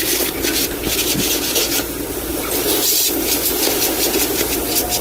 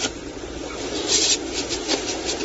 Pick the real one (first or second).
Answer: first